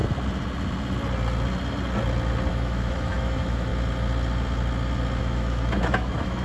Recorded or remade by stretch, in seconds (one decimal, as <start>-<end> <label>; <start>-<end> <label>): 0.0-2.5 recorded; 2.5-3.7 remade; 3.7-5.2 recorded; 5.2-6.4 remade